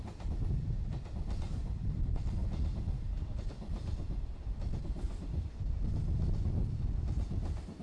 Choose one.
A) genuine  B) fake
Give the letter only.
A